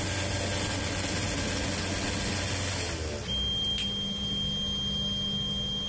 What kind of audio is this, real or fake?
real